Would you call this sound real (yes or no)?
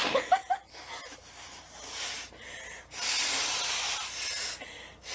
yes